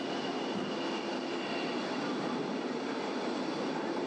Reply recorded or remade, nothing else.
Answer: recorded